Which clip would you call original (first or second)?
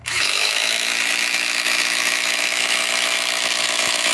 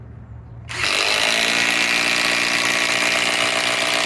second